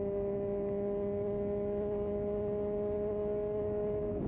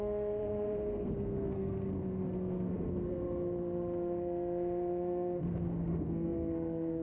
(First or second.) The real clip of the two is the first